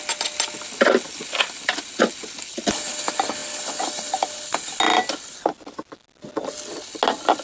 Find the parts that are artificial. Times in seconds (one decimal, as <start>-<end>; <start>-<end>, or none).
none